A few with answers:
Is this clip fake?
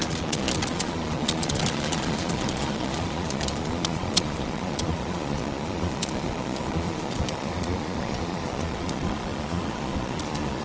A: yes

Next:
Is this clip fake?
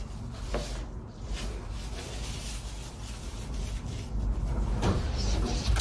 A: no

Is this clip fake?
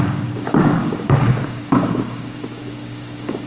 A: yes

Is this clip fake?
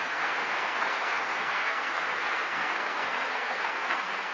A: yes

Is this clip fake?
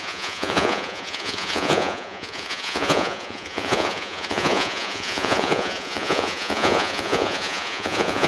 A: yes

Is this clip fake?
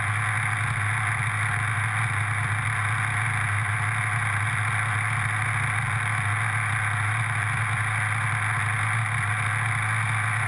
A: no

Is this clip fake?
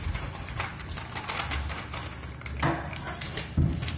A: no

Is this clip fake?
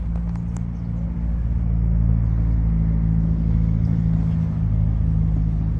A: no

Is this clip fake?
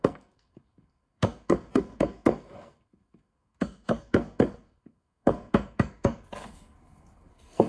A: yes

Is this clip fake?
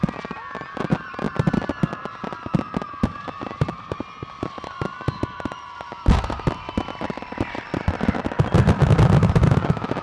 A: no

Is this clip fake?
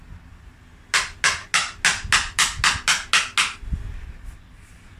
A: no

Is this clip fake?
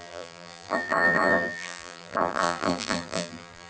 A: yes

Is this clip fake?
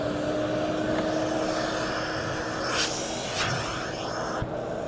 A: no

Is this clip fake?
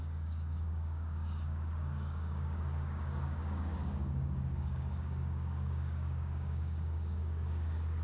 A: yes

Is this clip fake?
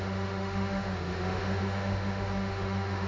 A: yes